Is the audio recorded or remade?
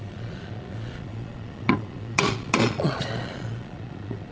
remade